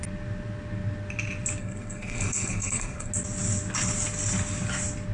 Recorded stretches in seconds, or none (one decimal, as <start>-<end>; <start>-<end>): 0.0-1.6; 3.1-5.1